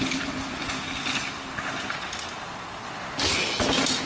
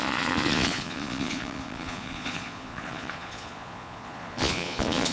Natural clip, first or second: first